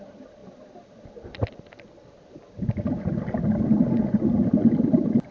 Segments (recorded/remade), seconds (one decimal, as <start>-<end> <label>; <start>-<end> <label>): 0.0-5.3 recorded